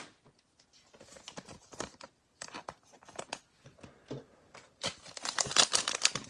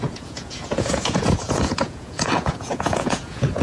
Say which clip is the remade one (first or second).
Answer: second